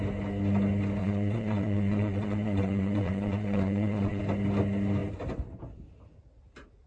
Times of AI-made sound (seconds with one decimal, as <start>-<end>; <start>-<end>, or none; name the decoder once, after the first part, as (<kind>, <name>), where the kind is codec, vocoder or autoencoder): 1.0-4.2 (vocoder, Vocos)